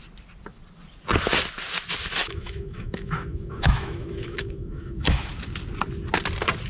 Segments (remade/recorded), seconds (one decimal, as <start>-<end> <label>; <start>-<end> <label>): 0.0-2.2 recorded; 2.2-5.3 remade; 5.3-6.7 recorded